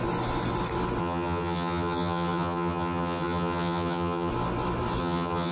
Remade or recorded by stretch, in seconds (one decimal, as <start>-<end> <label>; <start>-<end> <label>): 0.0-1.0 recorded; 1.0-4.3 remade; 4.3-5.0 recorded; 5.0-5.5 remade